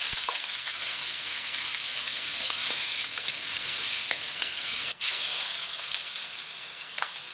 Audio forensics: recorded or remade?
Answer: remade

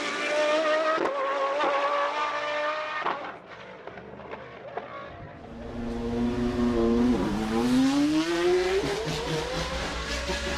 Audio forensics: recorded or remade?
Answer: recorded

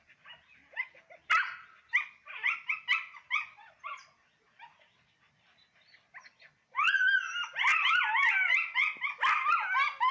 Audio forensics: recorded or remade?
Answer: recorded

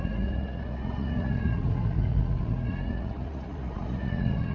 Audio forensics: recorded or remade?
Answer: remade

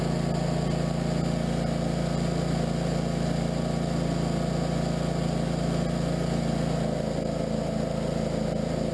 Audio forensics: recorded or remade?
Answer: recorded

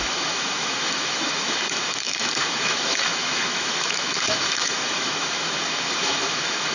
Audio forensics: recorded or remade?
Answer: remade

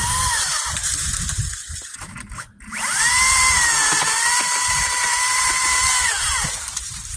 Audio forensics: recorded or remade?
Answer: remade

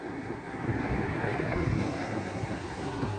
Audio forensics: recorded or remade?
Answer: remade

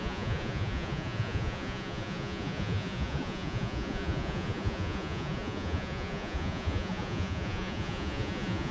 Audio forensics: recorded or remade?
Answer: remade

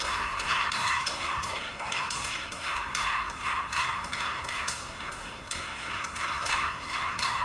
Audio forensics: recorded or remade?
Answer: remade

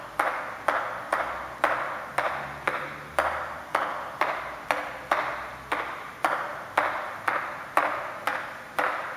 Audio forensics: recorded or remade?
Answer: recorded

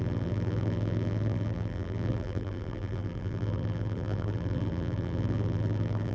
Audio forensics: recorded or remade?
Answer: remade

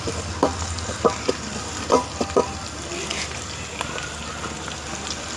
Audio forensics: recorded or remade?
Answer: recorded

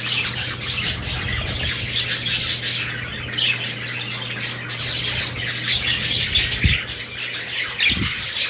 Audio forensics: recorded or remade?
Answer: recorded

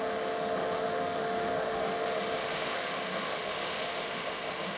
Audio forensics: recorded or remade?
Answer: remade